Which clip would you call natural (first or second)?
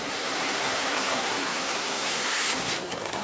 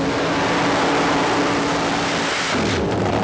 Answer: second